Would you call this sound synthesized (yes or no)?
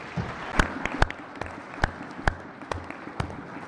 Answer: no